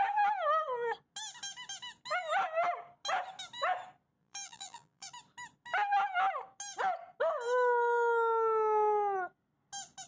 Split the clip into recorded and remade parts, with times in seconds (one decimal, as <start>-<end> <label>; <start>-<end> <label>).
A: 0.0-4.2 recorded; 4.2-5.1 remade; 5.1-10.1 recorded